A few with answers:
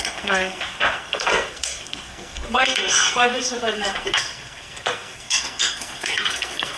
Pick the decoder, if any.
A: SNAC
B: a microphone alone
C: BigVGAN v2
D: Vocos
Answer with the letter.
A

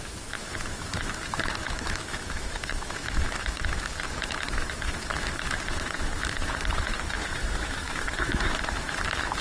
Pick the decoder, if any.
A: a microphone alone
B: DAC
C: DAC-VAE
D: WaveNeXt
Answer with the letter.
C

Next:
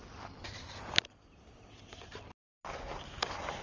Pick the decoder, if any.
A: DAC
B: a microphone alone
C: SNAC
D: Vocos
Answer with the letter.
B